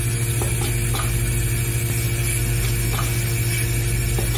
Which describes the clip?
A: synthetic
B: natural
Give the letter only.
B